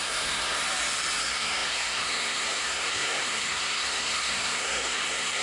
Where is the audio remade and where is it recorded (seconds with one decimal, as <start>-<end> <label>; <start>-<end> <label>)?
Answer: 0.0-0.6 remade; 0.6-1.2 recorded; 1.2-5.4 remade